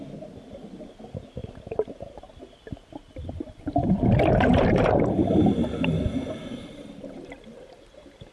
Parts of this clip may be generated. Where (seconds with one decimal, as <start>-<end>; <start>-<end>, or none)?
1.4-2.4; 3.0-3.7